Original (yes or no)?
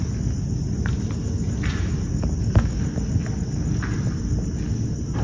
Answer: yes